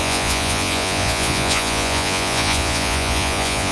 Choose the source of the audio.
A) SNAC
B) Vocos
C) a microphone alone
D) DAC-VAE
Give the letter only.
B